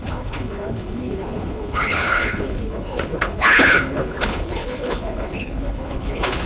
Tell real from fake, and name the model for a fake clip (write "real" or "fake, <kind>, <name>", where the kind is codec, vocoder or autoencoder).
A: fake, codec, HILCodec